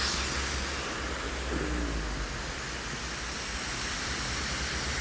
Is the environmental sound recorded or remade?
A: recorded